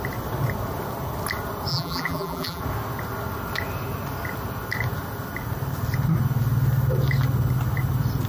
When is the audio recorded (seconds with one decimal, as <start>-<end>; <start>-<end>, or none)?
0.0-1.7; 2.6-8.3